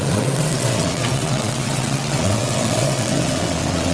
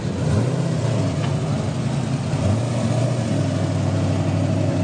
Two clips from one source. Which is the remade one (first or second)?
first